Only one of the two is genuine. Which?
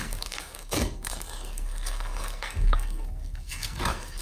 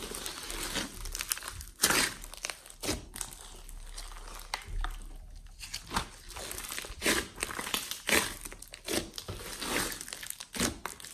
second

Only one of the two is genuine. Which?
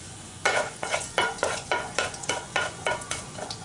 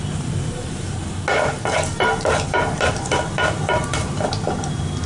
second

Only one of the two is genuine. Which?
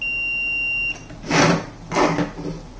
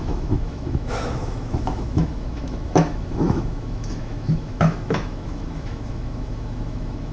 first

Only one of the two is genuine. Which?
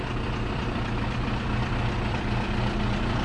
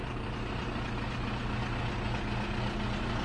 second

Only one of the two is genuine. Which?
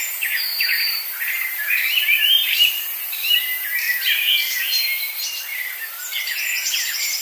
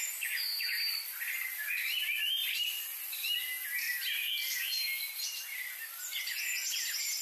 second